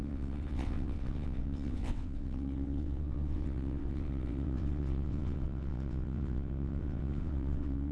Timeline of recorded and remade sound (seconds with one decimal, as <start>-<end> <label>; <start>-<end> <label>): 0.0-7.9 remade